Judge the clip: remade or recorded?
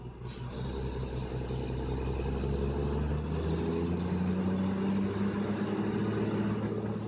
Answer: recorded